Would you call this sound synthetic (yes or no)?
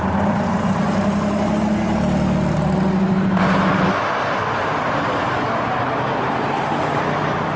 no